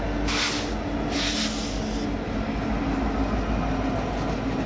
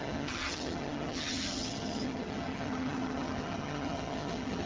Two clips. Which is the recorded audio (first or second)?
first